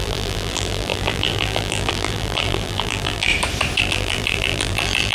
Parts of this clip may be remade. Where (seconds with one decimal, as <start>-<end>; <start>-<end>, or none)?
0.0-3.3; 3.8-5.1